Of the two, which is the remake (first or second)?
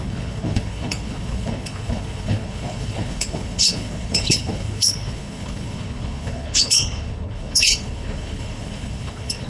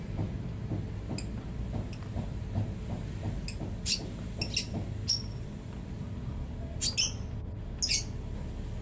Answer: first